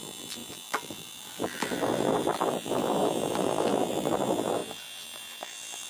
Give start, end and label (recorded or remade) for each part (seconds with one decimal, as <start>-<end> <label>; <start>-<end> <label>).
0.0-5.9 remade